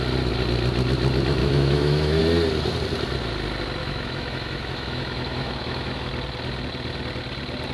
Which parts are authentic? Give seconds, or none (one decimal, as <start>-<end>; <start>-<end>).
0.0-1.4; 2.2-3.8; 6.1-7.7